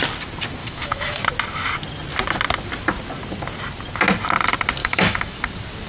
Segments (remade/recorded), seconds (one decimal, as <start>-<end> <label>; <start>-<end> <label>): 0.0-0.6 recorded; 0.6-1.2 remade; 1.2-4.8 recorded; 4.8-5.4 remade; 5.4-5.9 recorded